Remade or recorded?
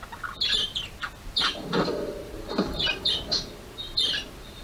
remade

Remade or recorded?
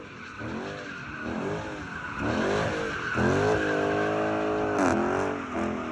recorded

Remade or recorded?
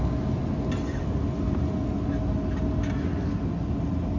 recorded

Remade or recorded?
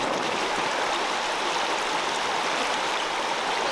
recorded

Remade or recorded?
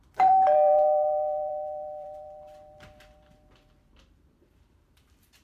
remade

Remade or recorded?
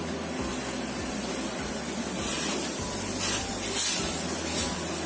recorded